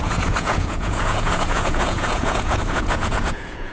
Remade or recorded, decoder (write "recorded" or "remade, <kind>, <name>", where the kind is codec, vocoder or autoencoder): remade, vocoder, Vocos